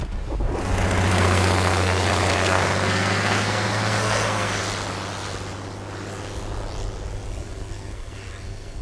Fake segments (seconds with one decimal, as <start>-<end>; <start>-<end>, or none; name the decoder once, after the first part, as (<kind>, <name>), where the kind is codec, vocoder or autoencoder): 1.1-4.6 (codec, SNAC); 7.4-8.8